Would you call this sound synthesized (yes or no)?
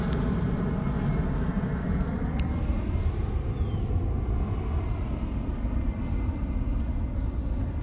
no